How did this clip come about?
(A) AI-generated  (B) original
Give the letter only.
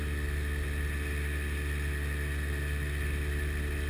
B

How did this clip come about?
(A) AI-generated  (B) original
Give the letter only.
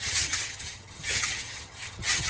A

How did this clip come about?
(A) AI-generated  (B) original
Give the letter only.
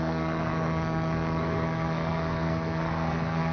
A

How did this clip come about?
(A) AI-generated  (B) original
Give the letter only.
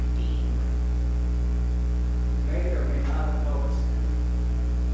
B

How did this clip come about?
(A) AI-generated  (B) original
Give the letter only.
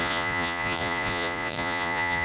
A